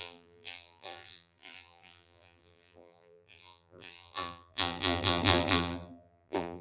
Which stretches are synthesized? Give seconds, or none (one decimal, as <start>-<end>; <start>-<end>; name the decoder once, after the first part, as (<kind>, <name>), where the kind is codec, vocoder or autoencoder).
0.0-6.6 (vocoder, BigVGAN v2)